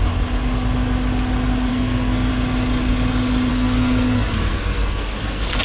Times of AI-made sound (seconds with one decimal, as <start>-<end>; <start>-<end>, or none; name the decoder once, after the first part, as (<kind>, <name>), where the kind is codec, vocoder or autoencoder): 1.7-2.3 (codec, SNAC); 3.5-5.6